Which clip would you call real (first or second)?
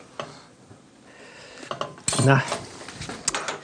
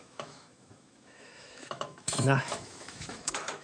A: first